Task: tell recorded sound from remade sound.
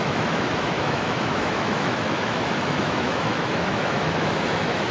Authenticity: remade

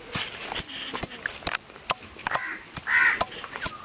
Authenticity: recorded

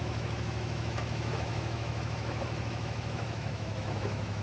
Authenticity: remade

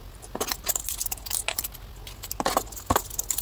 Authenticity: recorded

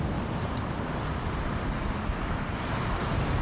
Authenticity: recorded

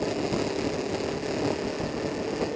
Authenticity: recorded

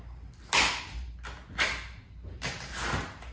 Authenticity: recorded